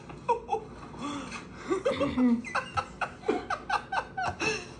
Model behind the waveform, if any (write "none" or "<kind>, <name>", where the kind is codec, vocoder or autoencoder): none